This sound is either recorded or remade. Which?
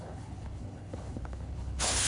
remade